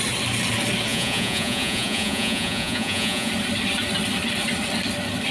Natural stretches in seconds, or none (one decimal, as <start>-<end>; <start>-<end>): 0.0-0.9; 3.3-5.3